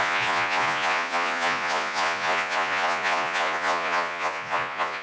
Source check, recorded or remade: remade